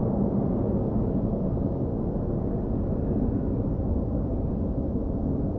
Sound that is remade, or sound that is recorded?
recorded